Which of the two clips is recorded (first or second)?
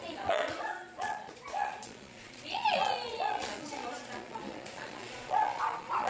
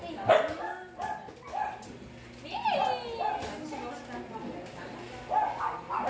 second